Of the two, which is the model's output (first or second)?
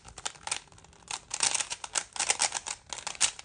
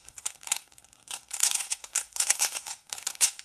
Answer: second